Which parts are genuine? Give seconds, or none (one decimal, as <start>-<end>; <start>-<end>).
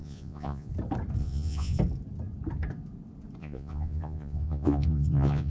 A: 0.7-1.2; 1.8-3.4